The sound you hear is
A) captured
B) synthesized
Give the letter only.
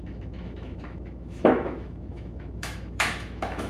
B